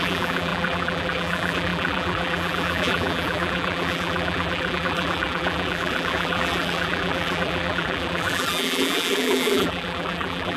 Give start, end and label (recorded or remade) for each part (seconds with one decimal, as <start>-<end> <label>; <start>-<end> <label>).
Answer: 0.0-10.6 remade